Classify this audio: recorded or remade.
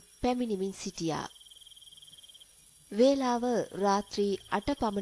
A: recorded